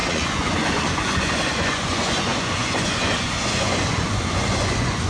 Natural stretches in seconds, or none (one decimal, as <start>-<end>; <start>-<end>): none